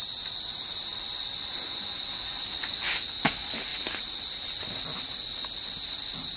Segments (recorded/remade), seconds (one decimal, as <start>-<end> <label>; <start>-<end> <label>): 0.0-6.4 recorded